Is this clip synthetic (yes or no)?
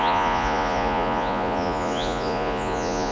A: yes